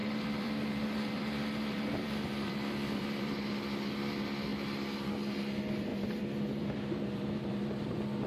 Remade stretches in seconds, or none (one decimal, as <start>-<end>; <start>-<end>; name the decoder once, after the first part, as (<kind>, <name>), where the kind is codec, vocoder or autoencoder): 0.0-3.3 (vocoder, BigVGAN v2); 5.9-7.9